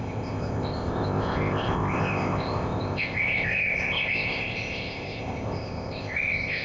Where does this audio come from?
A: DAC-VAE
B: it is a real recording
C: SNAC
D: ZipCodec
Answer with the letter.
D